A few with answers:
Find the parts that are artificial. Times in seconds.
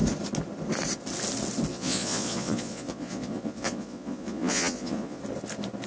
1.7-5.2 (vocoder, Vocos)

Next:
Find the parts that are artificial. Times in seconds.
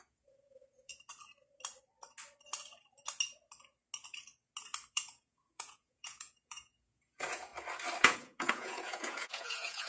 0.0-0.9 (vocoder, Vocos); 4.9-7.5; 8.0-9.9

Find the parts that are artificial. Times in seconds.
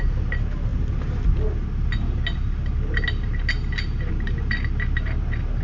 none